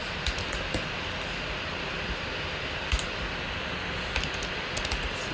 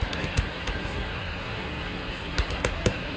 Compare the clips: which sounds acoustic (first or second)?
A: first